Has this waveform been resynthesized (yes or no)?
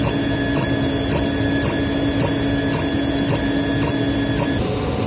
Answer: no